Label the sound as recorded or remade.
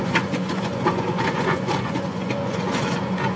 remade